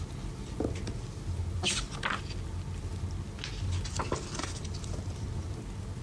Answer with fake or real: real